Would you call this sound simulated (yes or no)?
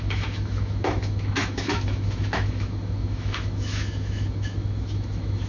yes